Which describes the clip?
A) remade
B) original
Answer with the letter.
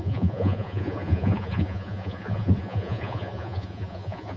A